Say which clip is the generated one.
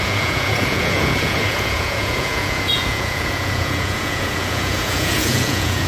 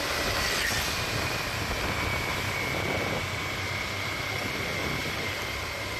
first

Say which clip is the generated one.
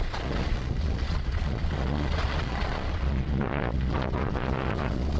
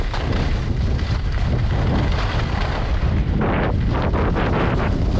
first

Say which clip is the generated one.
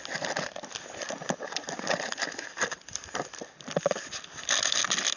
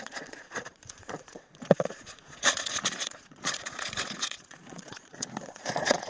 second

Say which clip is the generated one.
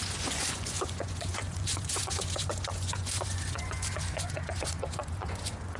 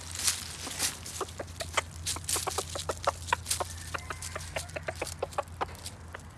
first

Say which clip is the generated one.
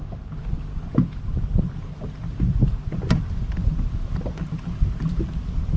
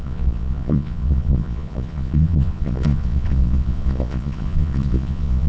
second